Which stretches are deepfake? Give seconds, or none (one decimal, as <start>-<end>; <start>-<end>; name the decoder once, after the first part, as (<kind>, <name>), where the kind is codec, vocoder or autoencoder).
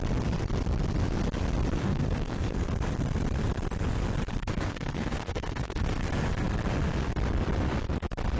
1.8-2.6 (codec, SNAC); 4.3-6.1